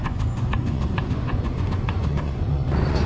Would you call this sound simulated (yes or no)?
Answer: yes